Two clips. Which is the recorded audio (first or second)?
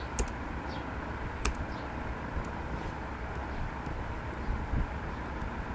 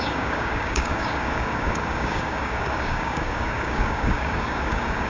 first